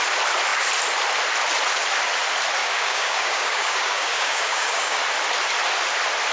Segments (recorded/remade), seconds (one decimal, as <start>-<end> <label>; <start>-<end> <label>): 0.0-2.6 recorded; 2.6-5.0 remade; 5.0-6.3 recorded